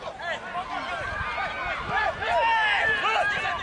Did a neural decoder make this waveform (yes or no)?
no